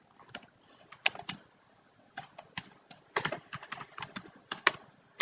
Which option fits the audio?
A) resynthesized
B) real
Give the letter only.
B